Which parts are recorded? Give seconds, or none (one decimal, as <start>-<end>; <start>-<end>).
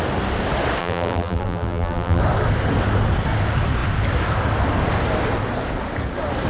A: 0.0-0.8; 2.2-6.5